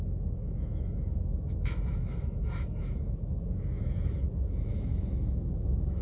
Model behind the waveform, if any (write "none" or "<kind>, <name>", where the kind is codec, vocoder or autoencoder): autoencoder, DAC-VAE